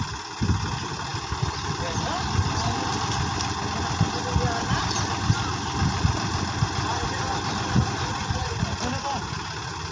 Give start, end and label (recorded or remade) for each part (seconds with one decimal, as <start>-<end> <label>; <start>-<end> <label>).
0.0-9.9 recorded